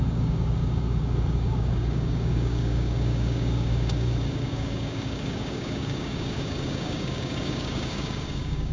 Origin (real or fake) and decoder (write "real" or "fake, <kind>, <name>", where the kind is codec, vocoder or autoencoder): fake, codec, DAC